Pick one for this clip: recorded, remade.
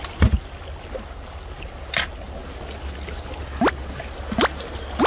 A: recorded